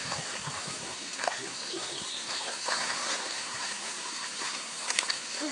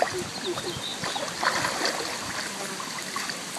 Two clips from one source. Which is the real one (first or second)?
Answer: second